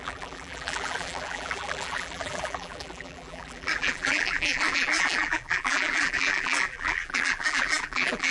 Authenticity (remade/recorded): remade